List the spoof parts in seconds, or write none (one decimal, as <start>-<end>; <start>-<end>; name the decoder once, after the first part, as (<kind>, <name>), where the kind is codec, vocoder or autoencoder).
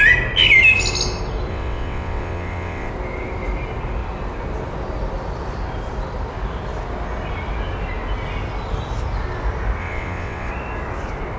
1.5-2.9 (vocoder, WaveNeXt); 9.8-10.5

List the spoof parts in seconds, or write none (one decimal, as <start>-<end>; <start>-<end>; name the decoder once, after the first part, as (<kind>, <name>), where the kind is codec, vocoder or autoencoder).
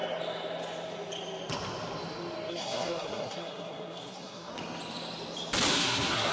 2.5-4.5 (codec, SNAC); 5.7-6.3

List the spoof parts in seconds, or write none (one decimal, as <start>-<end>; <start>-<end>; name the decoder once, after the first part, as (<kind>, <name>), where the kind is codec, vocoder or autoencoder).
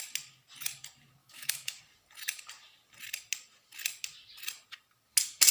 1.2-1.8 (autoencoder, DAC-VAE)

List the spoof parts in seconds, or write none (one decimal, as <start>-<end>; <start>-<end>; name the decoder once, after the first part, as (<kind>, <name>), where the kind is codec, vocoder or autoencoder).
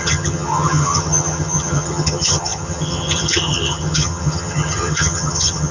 0.0-5.7 (vocoder, HiFi-GAN)